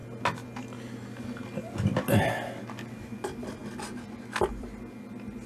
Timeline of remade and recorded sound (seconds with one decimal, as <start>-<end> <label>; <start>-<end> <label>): 0.0-2.9 recorded; 2.9-3.6 remade; 3.6-4.5 recorded; 4.5-5.5 remade